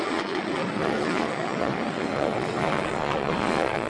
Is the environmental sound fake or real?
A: fake